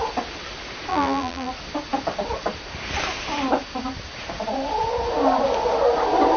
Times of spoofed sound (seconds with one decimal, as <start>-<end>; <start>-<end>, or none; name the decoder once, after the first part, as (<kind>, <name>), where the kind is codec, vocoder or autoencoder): 0.9-1.5 (vocoder, BigVGAN v2)